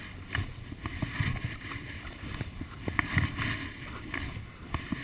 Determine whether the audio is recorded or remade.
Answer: recorded